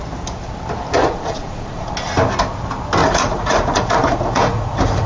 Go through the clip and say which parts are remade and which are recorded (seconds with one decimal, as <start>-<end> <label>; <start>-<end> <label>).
0.0-1.0 recorded; 1.0-1.9 remade; 1.9-3.0 recorded; 3.0-5.1 remade